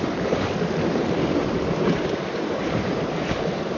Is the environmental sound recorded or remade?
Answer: remade